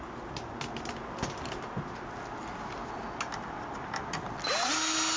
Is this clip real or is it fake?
real